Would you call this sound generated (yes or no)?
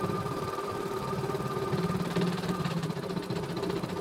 yes